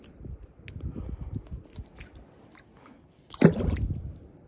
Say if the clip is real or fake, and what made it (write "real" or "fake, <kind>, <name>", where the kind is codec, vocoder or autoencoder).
real